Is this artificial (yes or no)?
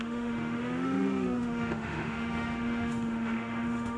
yes